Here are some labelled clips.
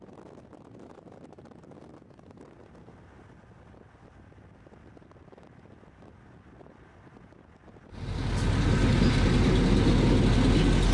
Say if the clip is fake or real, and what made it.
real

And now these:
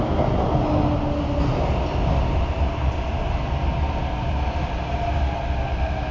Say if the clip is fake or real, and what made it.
real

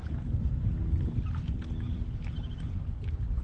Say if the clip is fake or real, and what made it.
real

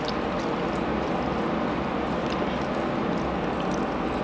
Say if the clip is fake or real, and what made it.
real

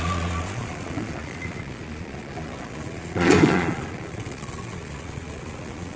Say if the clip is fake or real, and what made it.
fake, vocoder, Vocos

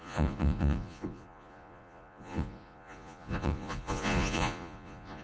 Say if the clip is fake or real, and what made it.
fake, vocoder, Vocos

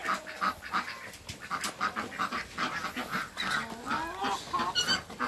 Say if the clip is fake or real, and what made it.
real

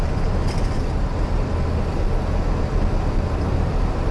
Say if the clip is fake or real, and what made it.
real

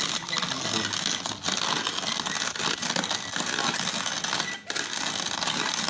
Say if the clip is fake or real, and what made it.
real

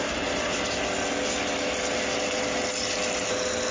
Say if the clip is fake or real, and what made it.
real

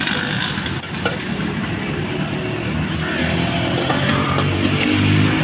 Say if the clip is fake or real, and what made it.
real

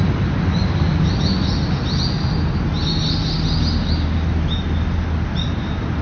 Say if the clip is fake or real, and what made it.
real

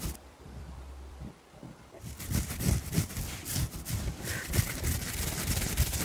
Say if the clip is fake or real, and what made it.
fake, vocoder, BigVGAN v2